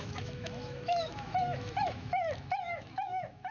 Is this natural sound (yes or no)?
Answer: no